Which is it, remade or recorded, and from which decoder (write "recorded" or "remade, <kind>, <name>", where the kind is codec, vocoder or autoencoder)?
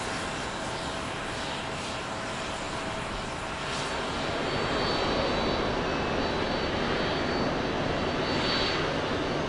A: recorded